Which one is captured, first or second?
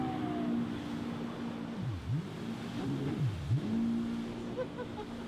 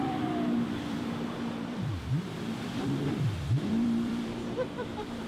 first